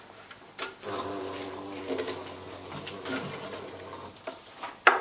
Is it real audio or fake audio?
real